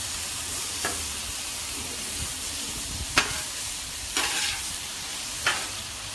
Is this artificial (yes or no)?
yes